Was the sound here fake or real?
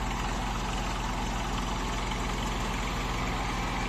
real